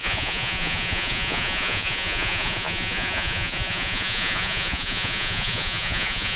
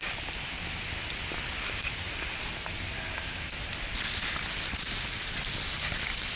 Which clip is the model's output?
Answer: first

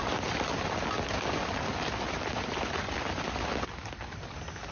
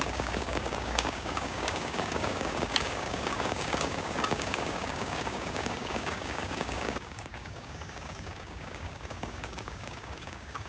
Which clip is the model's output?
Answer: second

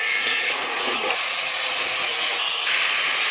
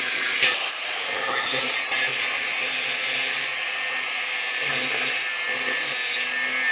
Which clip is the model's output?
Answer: first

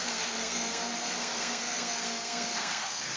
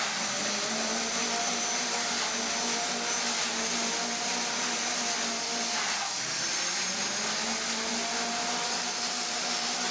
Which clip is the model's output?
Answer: first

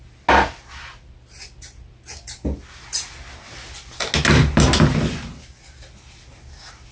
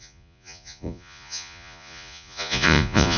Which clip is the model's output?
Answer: second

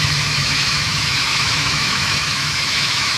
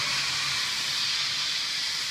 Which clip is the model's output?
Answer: first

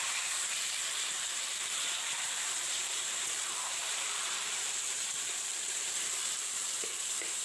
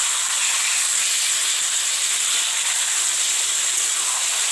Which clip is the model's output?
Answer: first